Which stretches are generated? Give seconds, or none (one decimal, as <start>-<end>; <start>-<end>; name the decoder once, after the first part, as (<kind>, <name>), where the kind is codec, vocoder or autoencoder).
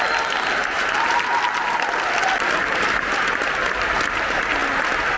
0.6-1.4 (vocoder, BigVGAN v2)